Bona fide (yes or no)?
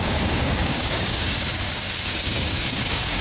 no